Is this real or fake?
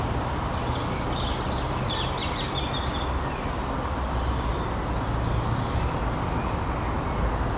real